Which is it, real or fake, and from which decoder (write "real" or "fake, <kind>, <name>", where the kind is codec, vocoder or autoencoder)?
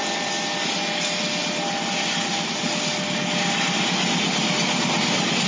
real